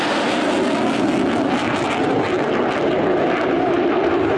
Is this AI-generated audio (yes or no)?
no